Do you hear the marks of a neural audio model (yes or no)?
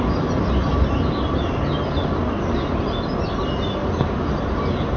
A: no